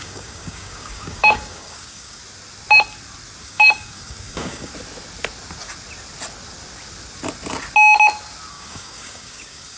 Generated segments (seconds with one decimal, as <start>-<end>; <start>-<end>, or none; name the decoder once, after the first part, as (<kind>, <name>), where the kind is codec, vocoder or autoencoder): 0.0-2.2 (codec, DAC); 3.4-4.7; 8.5-9.8